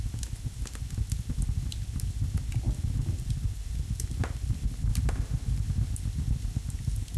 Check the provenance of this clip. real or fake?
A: real